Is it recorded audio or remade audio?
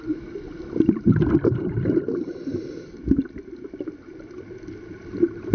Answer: remade